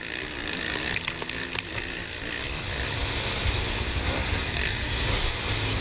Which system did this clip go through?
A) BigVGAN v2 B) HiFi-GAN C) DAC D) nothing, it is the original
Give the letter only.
D